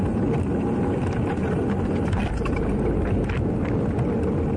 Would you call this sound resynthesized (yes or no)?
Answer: no